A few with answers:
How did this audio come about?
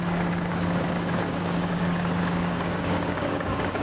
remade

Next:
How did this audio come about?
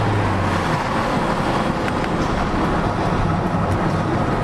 recorded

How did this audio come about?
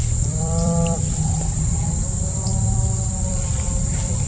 remade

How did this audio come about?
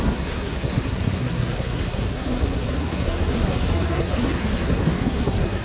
remade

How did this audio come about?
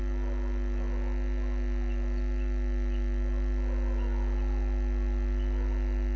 recorded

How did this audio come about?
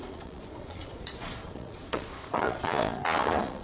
remade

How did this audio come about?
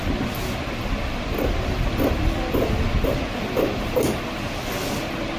recorded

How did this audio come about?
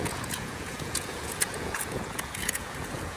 remade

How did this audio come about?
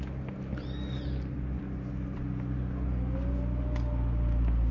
recorded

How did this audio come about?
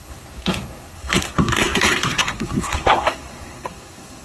remade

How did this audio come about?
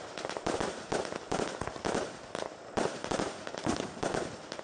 recorded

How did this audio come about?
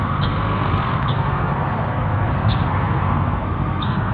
remade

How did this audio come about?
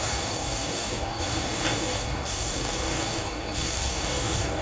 remade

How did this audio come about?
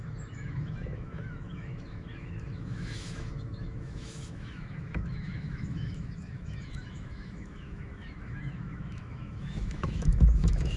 remade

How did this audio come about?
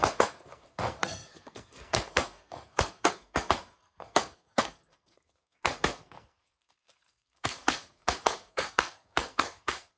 remade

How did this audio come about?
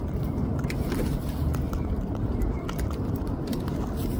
remade